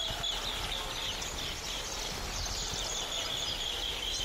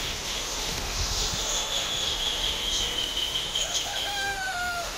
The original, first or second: first